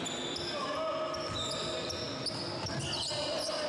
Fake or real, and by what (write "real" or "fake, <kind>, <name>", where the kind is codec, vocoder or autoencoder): real